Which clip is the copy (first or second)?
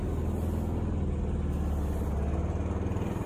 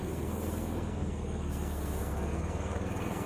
second